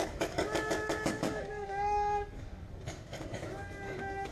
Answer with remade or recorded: remade